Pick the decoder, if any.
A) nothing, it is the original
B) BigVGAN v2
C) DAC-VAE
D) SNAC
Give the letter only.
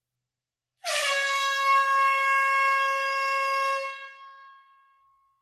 D